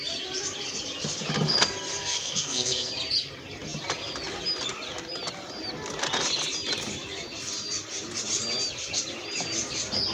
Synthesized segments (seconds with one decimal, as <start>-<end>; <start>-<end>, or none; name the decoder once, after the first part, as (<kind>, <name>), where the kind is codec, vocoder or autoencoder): 2.0-2.9 (codec, SNAC)